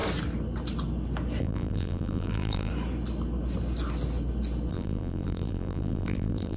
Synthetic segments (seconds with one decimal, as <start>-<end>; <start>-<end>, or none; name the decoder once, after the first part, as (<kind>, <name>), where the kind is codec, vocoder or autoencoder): 1.4-2.7 (vocoder, BigVGAN v2); 4.7-6.6